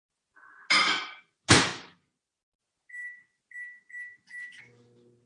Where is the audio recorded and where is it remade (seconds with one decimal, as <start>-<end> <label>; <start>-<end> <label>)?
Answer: 0.0-5.3 recorded